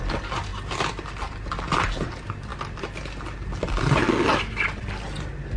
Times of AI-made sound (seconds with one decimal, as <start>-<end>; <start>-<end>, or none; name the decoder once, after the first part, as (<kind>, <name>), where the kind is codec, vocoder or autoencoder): none